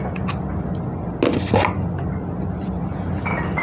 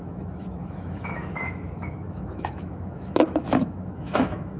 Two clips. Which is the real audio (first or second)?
first